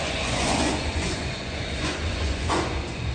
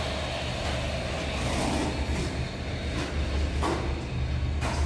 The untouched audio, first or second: second